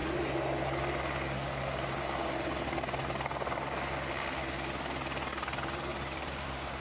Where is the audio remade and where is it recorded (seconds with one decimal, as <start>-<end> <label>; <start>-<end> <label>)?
0.0-5.9 recorded; 5.9-6.8 remade